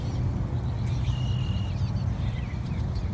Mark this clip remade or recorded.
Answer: recorded